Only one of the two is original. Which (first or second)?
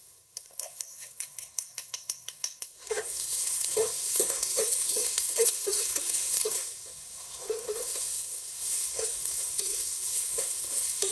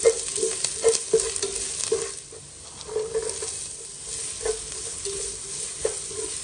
second